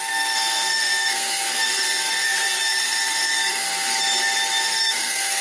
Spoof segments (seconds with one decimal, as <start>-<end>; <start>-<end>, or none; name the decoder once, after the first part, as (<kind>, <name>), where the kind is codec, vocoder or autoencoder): 0.0-3.9 (codec, SNAC); 4.6-5.4

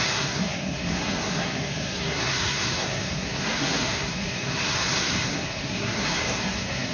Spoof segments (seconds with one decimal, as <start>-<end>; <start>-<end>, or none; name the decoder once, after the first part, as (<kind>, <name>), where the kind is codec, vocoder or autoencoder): 0.0-6.9 (codec, SNAC)